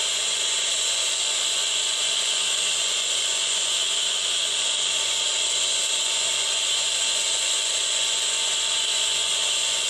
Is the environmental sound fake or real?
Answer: fake